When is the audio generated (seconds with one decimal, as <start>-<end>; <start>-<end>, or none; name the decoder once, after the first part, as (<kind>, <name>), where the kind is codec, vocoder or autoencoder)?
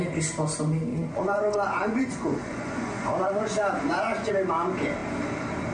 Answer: 0.9-4.3 (vocoder, Vocos)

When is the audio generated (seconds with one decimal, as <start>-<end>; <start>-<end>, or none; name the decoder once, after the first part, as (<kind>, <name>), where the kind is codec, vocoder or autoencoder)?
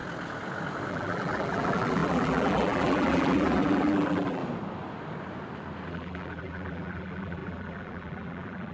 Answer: 0.9-4.4 (vocoder, BigVGAN v2); 5.9-8.7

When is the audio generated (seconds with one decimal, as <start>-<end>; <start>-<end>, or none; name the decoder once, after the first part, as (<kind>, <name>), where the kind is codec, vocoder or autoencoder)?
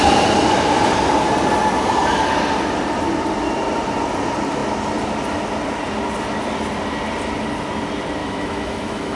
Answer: 8.2-9.2 (autoencoder, DAC-VAE)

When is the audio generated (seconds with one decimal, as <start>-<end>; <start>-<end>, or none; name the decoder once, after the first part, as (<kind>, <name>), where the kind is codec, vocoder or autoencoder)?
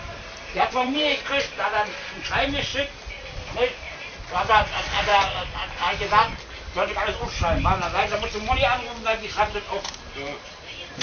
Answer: 0.0-2.7 (vocoder, BigVGAN v2); 3.4-5.1; 9.4-11.0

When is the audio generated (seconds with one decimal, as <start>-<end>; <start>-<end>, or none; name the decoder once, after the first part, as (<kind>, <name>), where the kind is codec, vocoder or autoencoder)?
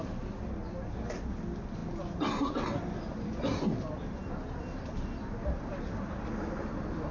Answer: none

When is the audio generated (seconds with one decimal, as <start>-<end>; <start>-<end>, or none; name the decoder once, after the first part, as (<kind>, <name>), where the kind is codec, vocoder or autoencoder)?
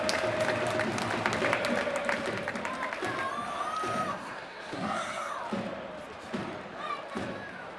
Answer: 4.1-5.3 (codec, SNAC)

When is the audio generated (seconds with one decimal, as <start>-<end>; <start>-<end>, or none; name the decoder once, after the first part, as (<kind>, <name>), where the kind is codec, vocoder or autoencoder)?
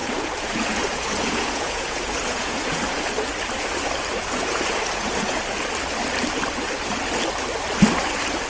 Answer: 0.0-3.1 (vocoder, Vocos); 4.1-5.4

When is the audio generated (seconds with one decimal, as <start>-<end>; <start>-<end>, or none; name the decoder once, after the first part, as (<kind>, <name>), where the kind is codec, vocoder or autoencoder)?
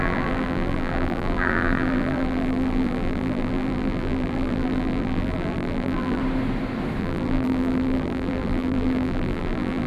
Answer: 0.0-6.2 (vocoder, BigVGAN v2); 7.0-9.9